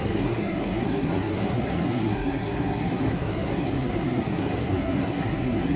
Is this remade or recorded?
remade